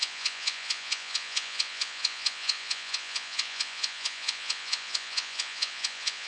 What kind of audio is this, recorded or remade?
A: remade